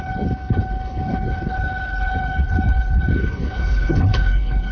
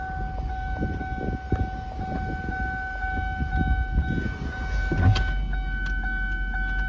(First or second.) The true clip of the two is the second